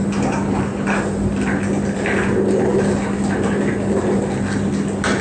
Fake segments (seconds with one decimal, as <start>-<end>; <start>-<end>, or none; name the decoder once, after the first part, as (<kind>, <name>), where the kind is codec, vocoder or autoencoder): none